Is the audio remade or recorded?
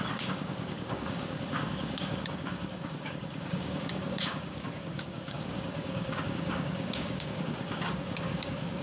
remade